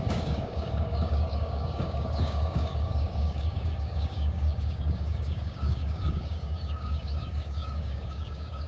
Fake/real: fake